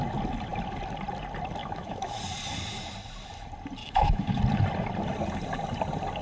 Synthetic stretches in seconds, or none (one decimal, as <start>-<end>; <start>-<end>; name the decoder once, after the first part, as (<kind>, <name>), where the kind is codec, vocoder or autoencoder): 1.6-2.2 (autoencoder, DAC-VAE); 3.8-4.4